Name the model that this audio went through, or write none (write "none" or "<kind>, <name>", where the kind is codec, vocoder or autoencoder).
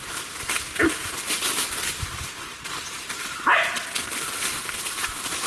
none